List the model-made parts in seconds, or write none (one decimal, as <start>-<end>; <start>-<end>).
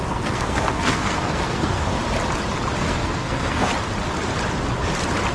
0.0-1.9; 2.8-3.7